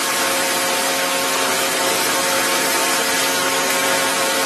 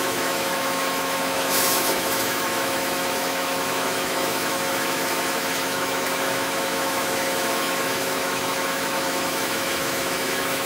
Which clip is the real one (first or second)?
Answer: first